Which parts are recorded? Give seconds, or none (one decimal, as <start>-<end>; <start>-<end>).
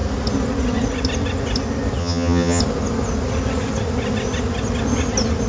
0.0-2.0; 2.6-5.5